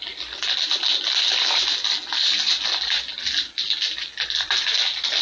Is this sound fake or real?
real